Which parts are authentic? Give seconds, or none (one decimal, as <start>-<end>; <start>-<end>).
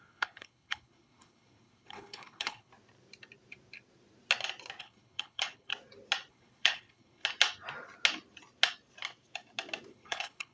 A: 2.7-4.8; 5.7-6.3; 7.2-9.9